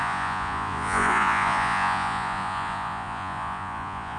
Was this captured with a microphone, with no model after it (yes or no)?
no